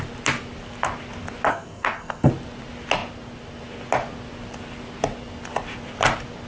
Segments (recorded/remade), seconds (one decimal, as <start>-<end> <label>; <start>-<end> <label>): 0.0-1.5 recorded; 1.5-2.3 remade; 2.3-6.5 recorded